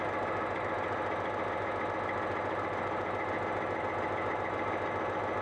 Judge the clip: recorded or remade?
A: recorded